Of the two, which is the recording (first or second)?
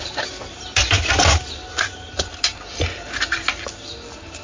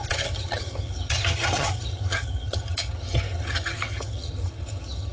first